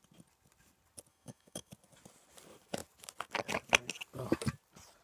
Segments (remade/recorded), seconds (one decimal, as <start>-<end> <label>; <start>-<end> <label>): 0.0-1.1 recorded; 1.1-1.7 remade; 1.7-5.0 recorded